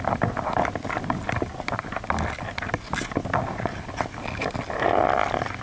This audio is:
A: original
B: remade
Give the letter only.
A